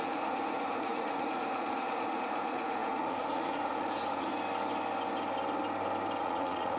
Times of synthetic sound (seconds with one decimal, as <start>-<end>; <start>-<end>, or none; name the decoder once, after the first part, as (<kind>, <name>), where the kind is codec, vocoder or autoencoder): 0.0-4.3 (vocoder, Vocos); 6.2-6.8